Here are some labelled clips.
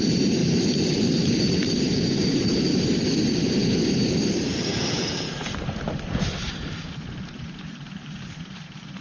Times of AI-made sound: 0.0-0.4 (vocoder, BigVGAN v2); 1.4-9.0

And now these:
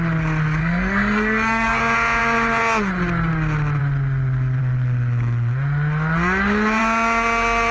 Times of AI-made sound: 0.6-1.8 (codec, SNAC)

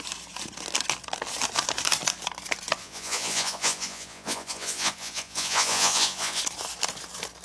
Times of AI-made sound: 2.8-6.4 (vocoder, Vocos)

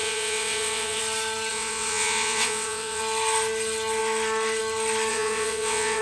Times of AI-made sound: 0.0-1.0 (vocoder, WaveNeXt); 1.5-3.0; 5.1-6.0

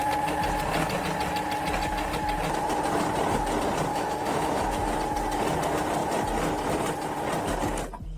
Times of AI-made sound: 3.9-4.9 (autoencoder, DAC-VAE)

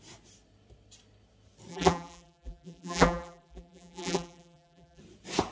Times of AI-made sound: 1.7-5.0 (vocoder, BigVGAN v2)

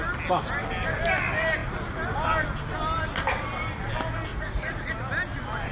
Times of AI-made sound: 4.3-4.9 (vocoder, Vocos)